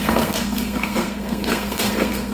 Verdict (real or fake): fake